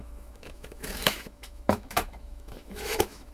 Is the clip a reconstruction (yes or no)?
yes